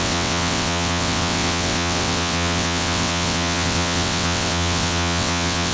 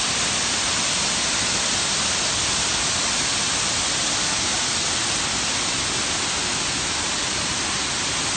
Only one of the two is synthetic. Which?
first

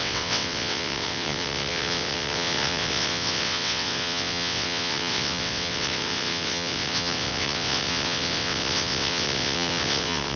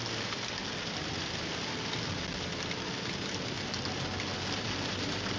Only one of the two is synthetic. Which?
first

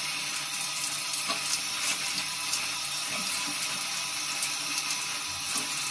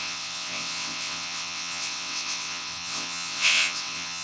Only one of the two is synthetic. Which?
second